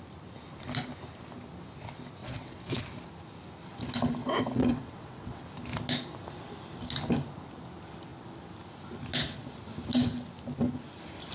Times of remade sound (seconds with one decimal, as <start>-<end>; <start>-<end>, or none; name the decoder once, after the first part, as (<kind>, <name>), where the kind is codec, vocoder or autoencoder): 2.2-2.8 (vocoder, WaveNeXt); 4.2-5.5